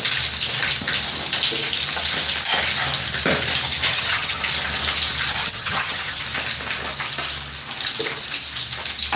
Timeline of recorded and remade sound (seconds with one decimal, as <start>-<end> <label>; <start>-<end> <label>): 0.0-3.9 recorded; 3.9-4.4 remade; 4.4-5.4 recorded; 5.4-6.2 remade; 6.2-9.2 recorded